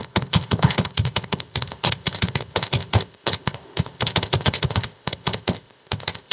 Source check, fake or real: fake